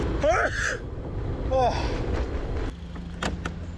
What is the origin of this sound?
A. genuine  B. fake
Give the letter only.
A